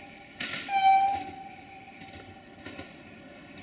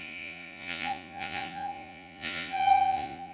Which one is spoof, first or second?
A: second